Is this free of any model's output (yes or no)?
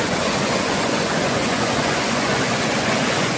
no